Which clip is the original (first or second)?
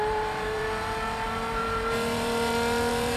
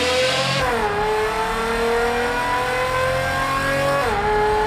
second